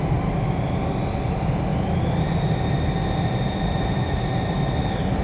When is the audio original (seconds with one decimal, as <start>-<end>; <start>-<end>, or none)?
0.0-5.2